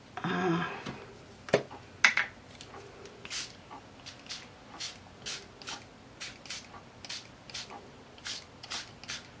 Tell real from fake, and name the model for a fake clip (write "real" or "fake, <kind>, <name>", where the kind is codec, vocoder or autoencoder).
real